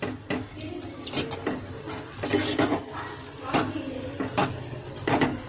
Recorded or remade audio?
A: recorded